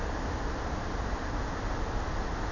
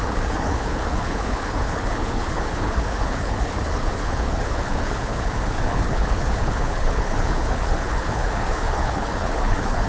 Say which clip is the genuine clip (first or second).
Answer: first